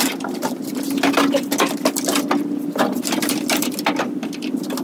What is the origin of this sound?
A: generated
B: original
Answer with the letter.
B